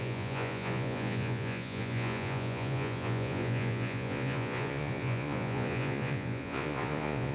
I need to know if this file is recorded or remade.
remade